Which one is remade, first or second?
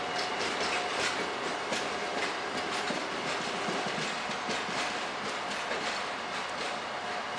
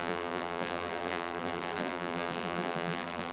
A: second